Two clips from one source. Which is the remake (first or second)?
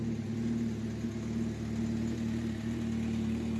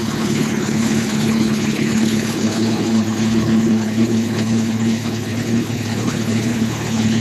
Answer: second